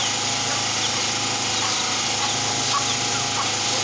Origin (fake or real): real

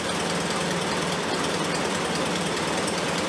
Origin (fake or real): fake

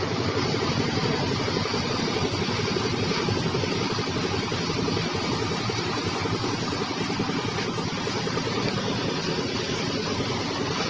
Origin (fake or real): real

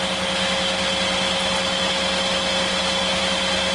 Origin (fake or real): real